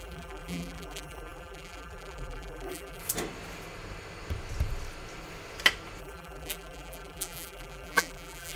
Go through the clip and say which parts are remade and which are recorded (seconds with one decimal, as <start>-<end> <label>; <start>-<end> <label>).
0.0-3.0 remade; 3.0-6.0 recorded; 6.0-8.6 remade